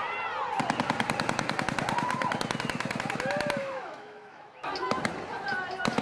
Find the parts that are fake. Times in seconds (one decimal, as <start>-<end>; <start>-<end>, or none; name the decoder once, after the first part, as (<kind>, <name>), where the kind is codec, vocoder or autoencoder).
3.6-4.7 (autoencoder, DAC-VAE)